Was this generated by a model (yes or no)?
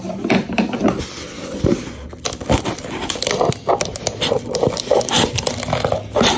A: no